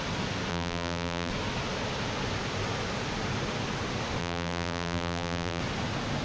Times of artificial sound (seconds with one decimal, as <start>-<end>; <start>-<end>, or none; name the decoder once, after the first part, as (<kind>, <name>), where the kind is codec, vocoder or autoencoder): 0.5-1.3 (vocoder, BigVGAN v2); 4.2-5.6